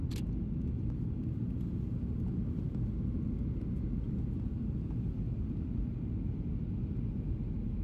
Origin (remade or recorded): recorded